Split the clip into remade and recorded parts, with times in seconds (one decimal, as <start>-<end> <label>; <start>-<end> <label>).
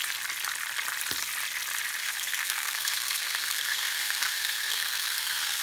0.0-2.0 recorded; 2.0-5.6 remade